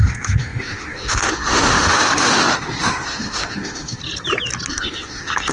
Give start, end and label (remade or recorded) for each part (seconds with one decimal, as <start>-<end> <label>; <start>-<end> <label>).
0.0-4.0 remade; 4.0-4.7 recorded; 4.7-5.5 remade